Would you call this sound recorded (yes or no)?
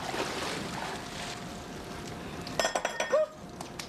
yes